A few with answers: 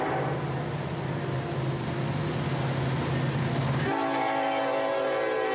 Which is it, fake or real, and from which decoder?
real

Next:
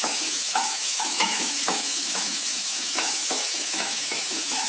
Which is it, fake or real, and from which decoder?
fake, autoencoder, DAC-VAE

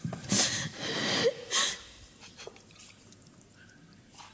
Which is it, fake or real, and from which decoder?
real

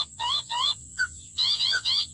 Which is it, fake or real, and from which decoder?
fake, vocoder, Vocos